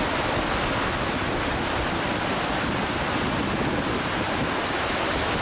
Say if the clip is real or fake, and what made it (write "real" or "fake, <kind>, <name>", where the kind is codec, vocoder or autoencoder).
real